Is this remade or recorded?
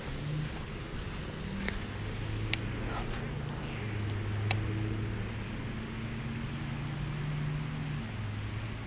recorded